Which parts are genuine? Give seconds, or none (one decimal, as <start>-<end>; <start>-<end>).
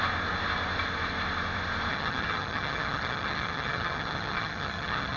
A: 0.0-1.9